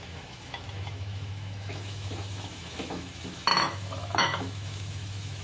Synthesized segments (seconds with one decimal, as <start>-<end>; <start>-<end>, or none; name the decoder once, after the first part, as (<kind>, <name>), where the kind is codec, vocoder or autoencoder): 0.0-5.4 (autoencoder, DAC-VAE)